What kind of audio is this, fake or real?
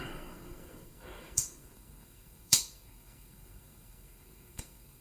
fake